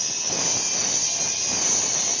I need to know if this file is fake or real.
real